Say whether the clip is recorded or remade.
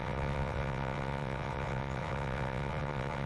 remade